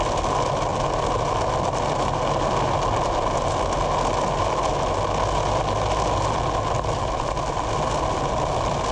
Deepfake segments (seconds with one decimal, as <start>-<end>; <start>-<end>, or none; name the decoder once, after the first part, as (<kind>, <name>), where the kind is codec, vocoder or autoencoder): none